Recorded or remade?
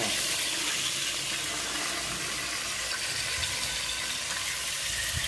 recorded